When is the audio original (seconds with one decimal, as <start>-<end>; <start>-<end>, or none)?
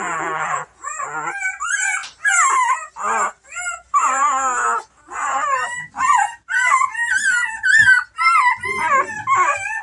0.0-9.8